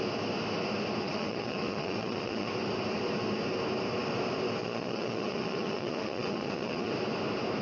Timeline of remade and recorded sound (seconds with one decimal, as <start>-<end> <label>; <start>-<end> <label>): 0.0-1.0 recorded; 1.0-2.5 remade; 2.5-4.6 recorded; 4.6-6.9 remade; 6.9-7.6 recorded